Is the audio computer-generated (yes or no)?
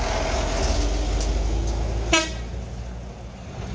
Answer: no